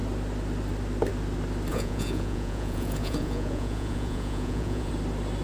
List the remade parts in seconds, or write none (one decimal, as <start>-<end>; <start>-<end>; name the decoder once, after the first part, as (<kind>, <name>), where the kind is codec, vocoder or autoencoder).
1.7-4.9 (vocoder, Vocos)